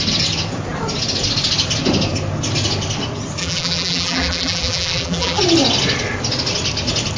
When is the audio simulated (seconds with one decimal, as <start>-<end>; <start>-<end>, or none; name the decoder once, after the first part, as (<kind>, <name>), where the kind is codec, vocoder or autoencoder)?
3.4-5.4 (vocoder, BigVGAN v2)